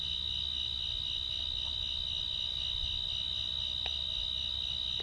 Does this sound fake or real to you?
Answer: real